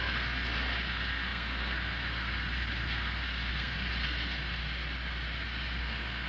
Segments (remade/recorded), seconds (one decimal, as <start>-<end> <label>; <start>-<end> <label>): 0.0-4.6 remade; 4.6-5.8 recorded; 5.8-6.3 remade